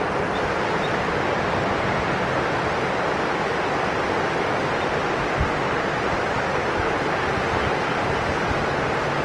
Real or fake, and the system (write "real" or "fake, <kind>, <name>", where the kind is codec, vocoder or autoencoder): real